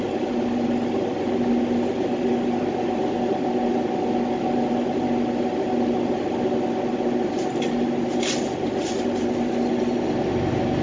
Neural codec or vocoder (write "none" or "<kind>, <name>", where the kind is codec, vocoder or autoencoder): none